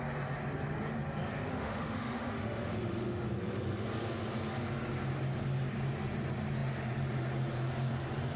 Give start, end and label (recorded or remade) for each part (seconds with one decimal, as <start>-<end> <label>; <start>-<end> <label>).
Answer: 0.0-1.5 recorded; 1.5-3.3 remade; 3.3-8.4 recorded